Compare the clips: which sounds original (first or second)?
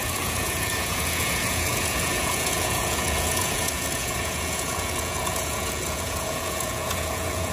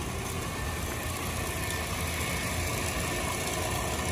second